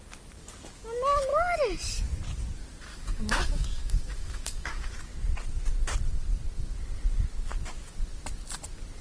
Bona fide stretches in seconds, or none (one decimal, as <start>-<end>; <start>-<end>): 0.0-2.9; 4.9-9.0